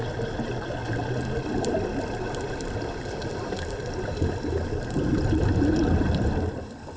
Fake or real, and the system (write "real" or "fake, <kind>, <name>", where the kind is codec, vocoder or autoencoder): real